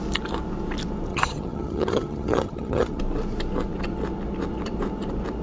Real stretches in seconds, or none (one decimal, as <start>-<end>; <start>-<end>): 0.0-1.1; 3.0-5.4